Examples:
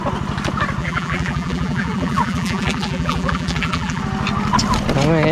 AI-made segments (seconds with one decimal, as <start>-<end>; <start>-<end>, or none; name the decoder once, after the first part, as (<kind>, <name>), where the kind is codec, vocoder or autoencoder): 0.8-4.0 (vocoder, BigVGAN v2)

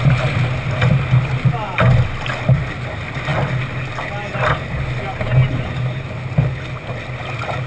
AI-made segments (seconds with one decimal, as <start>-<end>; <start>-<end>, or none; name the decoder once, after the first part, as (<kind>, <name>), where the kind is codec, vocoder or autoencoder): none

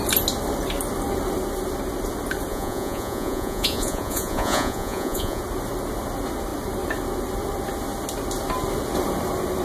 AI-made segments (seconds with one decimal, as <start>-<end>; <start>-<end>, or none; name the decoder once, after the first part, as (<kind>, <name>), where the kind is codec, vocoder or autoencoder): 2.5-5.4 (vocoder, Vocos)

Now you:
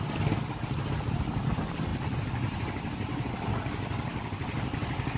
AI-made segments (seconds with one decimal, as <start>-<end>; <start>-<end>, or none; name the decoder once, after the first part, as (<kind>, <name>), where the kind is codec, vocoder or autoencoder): none

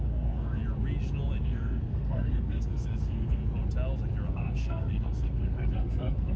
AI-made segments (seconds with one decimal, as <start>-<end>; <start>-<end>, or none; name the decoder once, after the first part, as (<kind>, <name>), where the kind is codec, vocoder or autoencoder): 0.0-0.6 (codec, SNAC); 1.4-3.4; 4.3-6.4

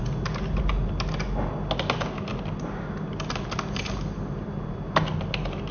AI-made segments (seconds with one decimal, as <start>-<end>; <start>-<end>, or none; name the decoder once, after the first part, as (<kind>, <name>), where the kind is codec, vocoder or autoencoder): none

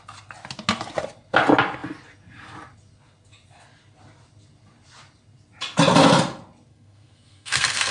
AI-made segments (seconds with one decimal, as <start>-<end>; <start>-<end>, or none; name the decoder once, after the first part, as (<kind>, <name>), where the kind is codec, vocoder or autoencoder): 6.7-7.9 (codec, SNAC)

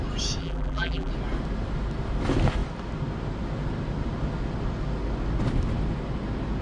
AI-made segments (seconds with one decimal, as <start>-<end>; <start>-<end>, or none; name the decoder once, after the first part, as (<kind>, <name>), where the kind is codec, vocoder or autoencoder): 0.4-1.1 (vocoder, BigVGAN v2)